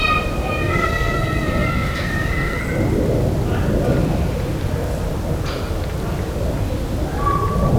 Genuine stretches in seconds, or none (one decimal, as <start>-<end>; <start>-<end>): 0.0-0.6; 2.6-7.8